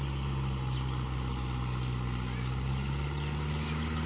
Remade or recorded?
recorded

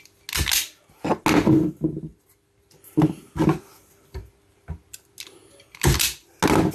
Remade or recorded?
recorded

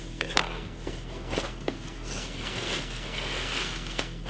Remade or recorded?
remade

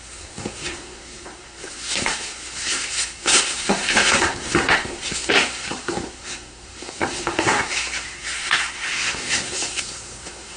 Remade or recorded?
remade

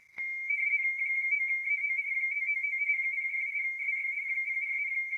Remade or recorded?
remade